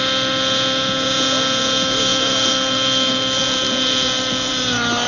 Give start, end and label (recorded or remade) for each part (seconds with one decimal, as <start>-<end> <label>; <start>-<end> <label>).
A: 0.0-5.1 recorded